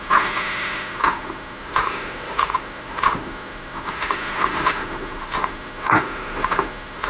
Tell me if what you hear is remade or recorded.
remade